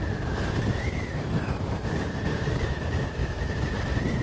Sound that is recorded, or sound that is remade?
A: remade